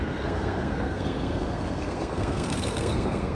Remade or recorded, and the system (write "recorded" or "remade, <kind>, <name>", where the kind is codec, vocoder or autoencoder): remade, codec, SNAC